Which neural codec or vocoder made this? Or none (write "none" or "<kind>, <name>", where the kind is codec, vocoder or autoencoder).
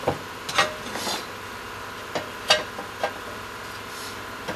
none